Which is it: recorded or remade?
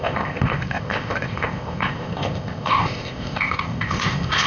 remade